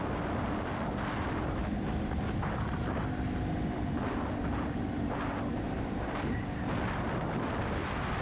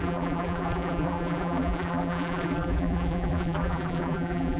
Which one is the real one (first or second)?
first